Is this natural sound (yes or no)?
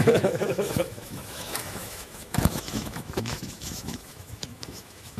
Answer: no